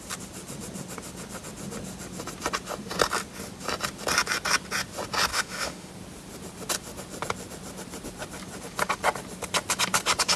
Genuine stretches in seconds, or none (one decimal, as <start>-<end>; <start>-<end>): 0.0-5.3; 5.9-10.4